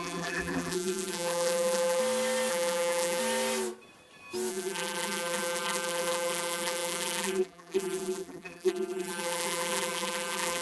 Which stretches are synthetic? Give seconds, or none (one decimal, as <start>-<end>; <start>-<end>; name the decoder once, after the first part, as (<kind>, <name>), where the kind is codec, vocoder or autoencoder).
0.0-2.0 (vocoder, BigVGAN v2); 2.5-3.2; 4.5-10.6